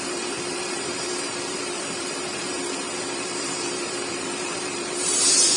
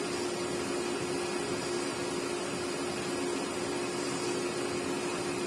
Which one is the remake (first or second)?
first